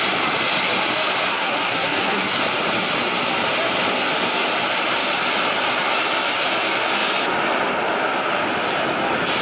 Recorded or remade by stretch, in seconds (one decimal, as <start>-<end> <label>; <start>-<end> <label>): 0.0-1.3 recorded; 1.3-2.4 remade; 2.4-9.4 recorded